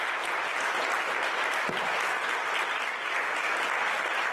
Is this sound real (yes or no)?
yes